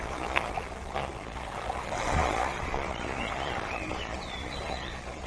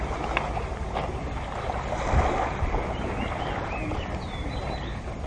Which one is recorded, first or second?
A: second